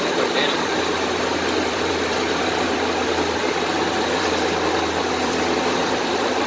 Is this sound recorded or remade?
remade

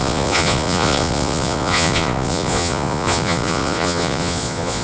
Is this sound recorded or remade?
remade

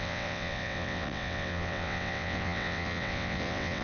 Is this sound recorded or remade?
remade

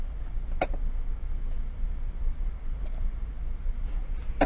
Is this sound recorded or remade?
recorded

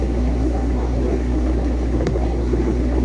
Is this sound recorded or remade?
remade